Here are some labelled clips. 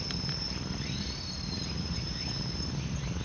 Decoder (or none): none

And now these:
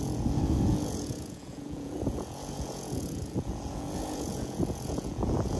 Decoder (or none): vocoder, Vocos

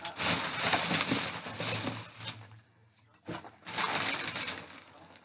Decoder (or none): none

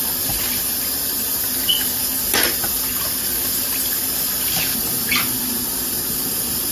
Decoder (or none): none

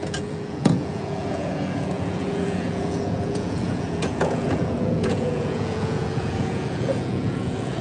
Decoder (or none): vocoder, Vocos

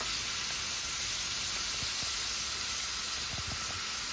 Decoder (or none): none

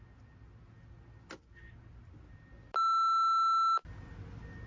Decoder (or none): none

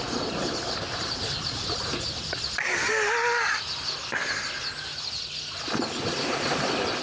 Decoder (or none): none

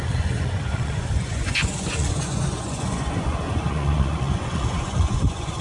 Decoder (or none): vocoder, Vocos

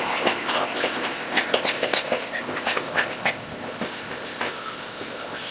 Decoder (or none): codec, ZipCodec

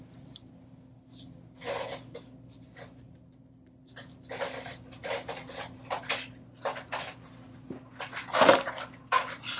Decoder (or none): none